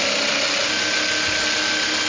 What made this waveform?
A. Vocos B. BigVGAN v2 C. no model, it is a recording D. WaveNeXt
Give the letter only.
C